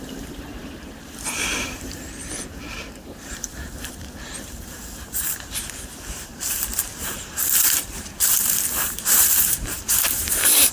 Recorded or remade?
remade